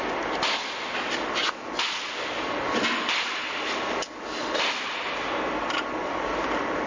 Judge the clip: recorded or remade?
recorded